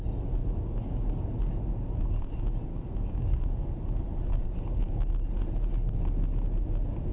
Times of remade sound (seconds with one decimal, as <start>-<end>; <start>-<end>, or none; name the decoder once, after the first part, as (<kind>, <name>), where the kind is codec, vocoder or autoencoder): 0.4-1.2 (codec, DAC); 2.7-3.7; 4.3-5.1